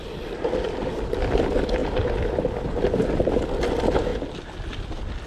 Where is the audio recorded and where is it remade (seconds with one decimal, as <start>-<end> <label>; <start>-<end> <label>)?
0.0-5.3 recorded